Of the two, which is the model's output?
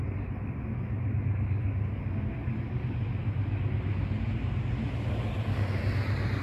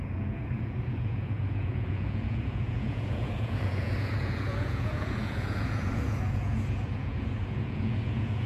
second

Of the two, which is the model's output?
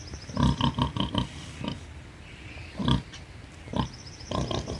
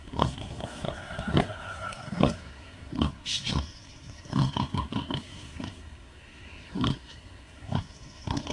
second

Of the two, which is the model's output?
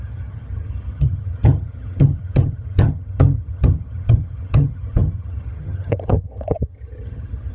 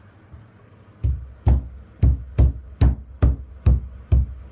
first